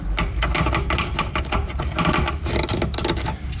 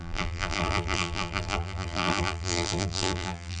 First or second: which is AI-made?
second